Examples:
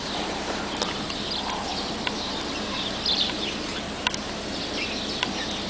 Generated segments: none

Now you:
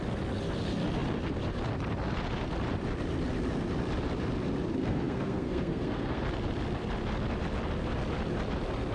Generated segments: 4.8-6.2 (codec, SNAC)

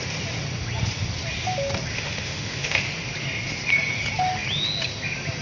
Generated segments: 1.9-2.8 (autoencoder, DAC-VAE)

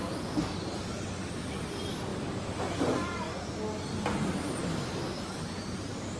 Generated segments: none